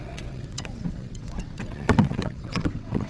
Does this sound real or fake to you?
fake